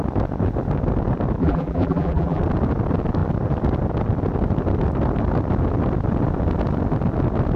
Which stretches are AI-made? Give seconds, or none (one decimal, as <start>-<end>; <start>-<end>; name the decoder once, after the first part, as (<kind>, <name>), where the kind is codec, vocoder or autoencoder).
1.4-2.4 (vocoder, BigVGAN v2)